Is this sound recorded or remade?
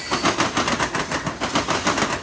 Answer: recorded